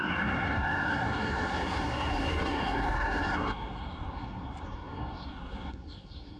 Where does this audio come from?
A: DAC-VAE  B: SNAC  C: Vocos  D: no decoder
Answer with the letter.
B